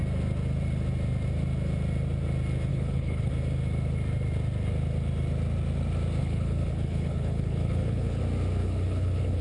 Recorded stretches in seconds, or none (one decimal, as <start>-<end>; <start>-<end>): 0.0-2.7; 3.3-6.2; 8.2-8.6